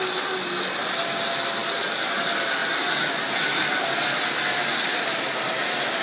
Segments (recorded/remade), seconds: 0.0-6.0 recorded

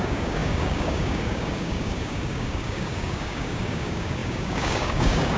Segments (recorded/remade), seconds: 0.0-5.4 remade

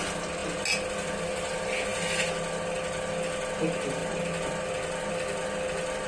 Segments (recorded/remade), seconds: 0.0-6.1 recorded